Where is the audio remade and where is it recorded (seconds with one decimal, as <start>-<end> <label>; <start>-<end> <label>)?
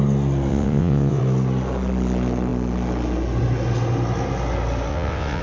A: 0.0-0.5 recorded; 0.5-1.2 remade; 1.2-4.9 recorded; 4.9-5.4 remade